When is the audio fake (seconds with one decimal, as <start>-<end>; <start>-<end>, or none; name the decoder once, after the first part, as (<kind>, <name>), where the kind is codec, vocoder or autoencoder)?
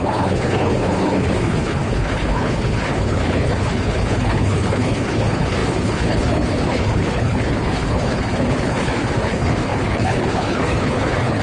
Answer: 0.0-11.4 (codec, HILCodec)